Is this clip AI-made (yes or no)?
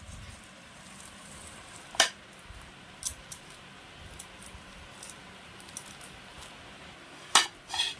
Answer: no